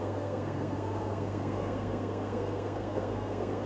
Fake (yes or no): yes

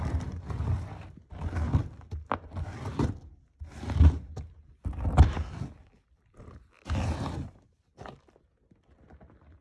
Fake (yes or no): no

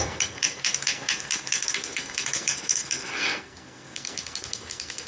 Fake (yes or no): yes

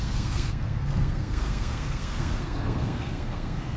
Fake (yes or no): yes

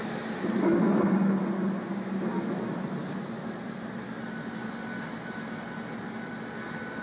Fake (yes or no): no